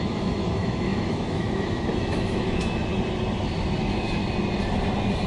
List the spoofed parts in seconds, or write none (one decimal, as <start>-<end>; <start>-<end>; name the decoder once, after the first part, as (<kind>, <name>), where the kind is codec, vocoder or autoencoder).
0.0-2.9 (autoencoder, DAC-VAE); 3.8-4.2

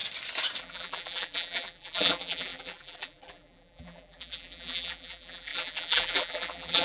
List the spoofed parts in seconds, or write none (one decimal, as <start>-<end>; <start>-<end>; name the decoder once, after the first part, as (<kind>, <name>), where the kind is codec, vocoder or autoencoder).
0.6-6.8 (vocoder, BigVGAN v2)

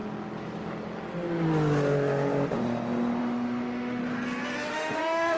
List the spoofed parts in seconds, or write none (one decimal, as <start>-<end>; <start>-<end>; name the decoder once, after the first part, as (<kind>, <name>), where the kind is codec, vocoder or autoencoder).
3.2-4.0 (autoencoder, DAC-VAE); 4.7-5.4

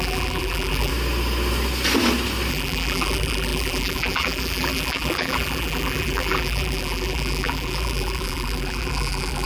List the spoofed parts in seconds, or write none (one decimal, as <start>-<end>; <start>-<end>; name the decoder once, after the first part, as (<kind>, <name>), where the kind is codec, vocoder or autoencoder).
0.0-0.9 (vocoder, BigVGAN v2); 2.5-9.5

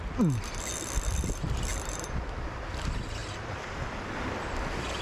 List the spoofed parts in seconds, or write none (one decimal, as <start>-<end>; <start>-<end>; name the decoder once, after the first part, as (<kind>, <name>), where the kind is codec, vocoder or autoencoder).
3.2-3.8 (vocoder, BigVGAN v2)

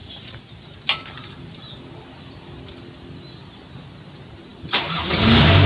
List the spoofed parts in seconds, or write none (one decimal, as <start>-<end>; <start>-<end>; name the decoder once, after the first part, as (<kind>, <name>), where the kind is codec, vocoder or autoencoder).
0.0-1.6 (vocoder, BigVGAN v2)

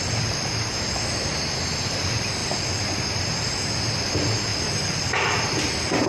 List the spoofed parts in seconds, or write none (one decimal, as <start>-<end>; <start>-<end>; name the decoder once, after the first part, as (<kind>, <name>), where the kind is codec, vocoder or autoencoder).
2.4-3.2 (vocoder, BigVGAN v2); 4.5-5.1

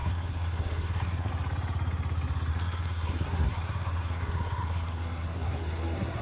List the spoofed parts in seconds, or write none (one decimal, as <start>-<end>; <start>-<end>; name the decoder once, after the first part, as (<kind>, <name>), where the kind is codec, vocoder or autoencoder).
0.0-1.3 (codec, SNAC); 2.5-6.2